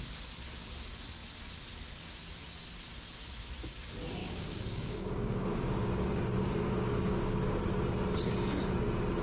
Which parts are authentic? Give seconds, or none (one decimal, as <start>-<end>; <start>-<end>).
0.0-4.2; 7.6-9.2